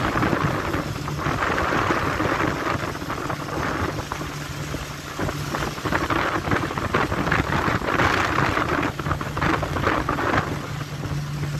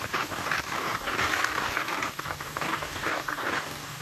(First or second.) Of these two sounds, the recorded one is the first